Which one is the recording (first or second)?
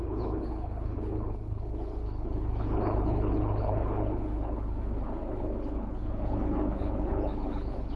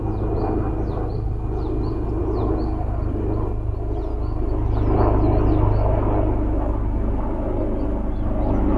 second